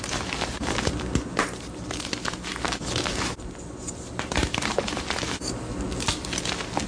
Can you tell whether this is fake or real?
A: real